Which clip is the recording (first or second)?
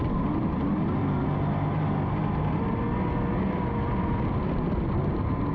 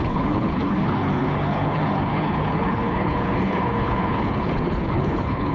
first